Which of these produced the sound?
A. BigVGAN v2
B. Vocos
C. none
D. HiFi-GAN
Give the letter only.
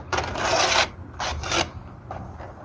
C